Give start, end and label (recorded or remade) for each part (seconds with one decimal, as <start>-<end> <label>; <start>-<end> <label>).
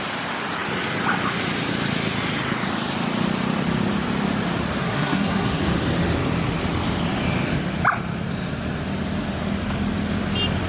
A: 0.0-4.8 recorded; 4.8-5.6 remade; 5.6-10.7 recorded